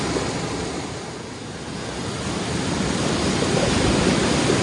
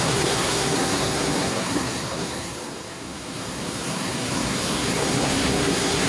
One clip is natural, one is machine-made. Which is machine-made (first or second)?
second